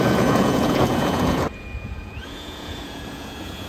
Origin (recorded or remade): remade